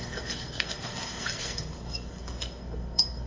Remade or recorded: remade